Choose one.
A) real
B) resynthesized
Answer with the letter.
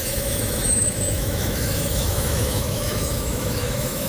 B